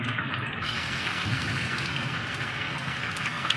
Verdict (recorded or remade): remade